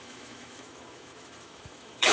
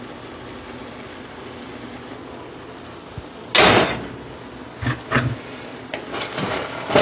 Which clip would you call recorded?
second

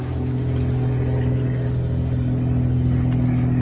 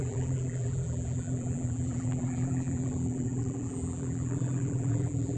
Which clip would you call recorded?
first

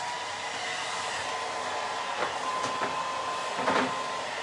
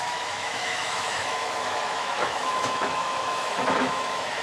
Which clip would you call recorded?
first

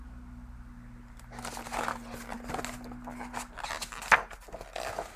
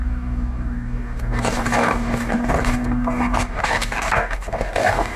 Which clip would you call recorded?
first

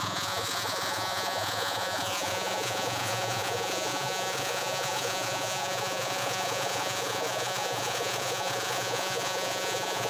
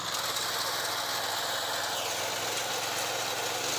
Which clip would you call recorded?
second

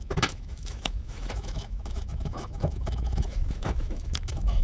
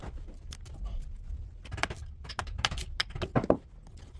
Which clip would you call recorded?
second